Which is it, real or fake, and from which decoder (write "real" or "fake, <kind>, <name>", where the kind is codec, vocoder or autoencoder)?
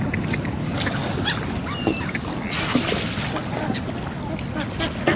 real